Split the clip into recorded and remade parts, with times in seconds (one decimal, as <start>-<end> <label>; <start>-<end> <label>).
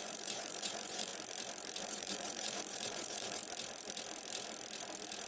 0.0-1.1 remade; 1.1-1.8 recorded; 1.8-3.4 remade; 3.4-5.3 recorded